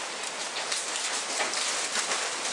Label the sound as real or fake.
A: real